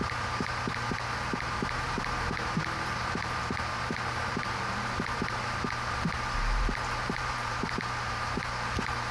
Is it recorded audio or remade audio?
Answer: remade